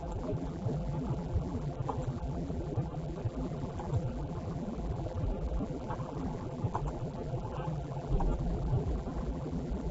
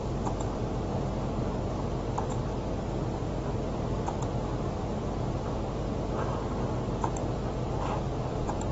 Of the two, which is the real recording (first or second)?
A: second